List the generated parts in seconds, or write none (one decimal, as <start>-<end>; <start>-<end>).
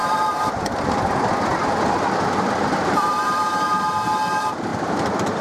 0.0-0.7; 1.5-3.5; 4.7-5.4